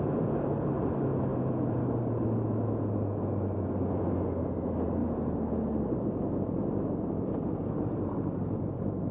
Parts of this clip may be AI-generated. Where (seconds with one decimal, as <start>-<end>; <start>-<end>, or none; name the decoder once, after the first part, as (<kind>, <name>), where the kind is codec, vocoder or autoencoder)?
none